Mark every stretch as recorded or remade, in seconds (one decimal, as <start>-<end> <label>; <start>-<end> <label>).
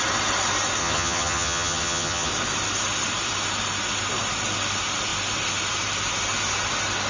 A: 0.0-0.8 recorded; 0.8-2.3 remade; 2.3-7.1 recorded